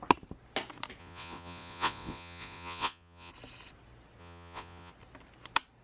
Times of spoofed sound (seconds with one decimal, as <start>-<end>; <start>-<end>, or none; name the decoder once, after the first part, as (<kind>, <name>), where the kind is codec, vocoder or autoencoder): 1.0-3.3 (vocoder, Vocos); 4.2-4.9